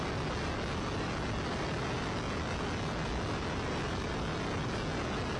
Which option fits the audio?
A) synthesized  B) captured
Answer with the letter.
B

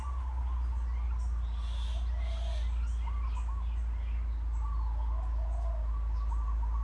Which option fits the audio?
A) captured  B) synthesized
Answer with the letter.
A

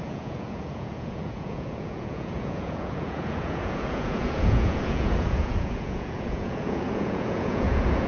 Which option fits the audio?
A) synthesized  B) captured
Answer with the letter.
A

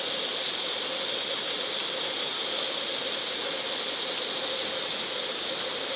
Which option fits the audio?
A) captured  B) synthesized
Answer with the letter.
A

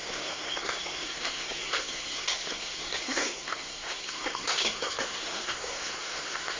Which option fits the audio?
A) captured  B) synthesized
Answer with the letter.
B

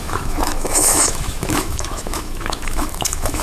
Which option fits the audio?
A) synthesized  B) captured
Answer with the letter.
A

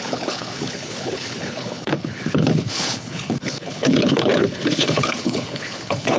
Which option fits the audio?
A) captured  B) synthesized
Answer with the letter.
B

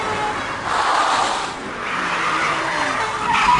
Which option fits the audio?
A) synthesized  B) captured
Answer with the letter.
B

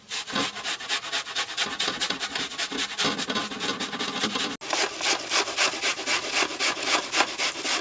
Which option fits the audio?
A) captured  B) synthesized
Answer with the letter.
A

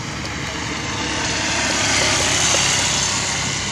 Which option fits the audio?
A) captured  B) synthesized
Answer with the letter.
A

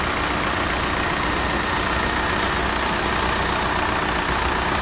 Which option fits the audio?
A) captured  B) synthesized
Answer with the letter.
A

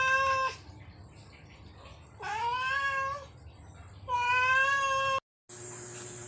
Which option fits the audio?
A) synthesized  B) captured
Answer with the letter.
B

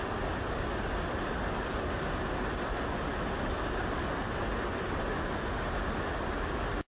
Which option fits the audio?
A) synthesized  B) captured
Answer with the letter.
B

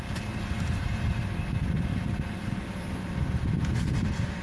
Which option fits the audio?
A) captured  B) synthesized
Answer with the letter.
A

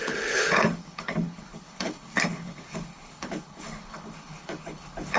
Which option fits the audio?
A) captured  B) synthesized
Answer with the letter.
B